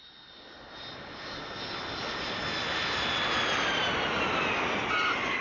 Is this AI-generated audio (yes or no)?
no